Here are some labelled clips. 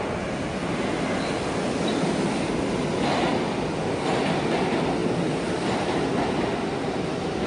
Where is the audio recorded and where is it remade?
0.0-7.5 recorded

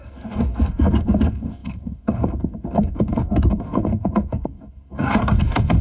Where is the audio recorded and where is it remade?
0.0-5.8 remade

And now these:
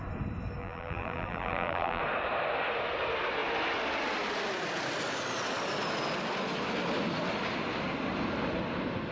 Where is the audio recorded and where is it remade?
0.0-0.6 recorded; 0.6-2.0 remade; 2.0-9.1 recorded

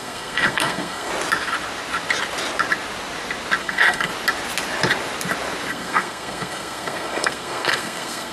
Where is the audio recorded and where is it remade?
0.0-1.1 remade; 1.1-3.6 recorded; 3.6-4.1 remade; 4.1-5.7 recorded; 5.7-8.3 remade

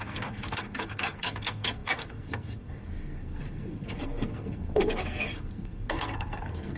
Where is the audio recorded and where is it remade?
0.0-6.8 remade

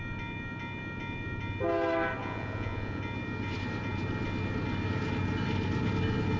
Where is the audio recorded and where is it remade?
0.0-2.2 recorded; 2.2-3.0 remade; 3.0-6.4 recorded

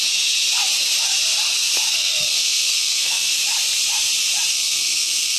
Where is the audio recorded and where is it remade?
0.0-1.9 recorded; 1.9-3.3 remade; 3.3-4.5 recorded; 4.5-5.4 remade